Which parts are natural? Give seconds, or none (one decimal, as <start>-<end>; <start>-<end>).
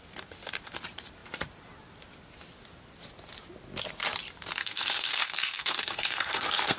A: 0.0-4.6